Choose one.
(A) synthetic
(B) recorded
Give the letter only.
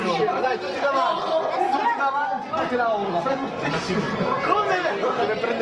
B